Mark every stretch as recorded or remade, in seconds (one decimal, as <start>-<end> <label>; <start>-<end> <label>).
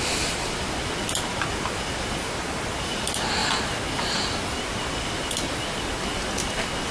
0.0-6.9 recorded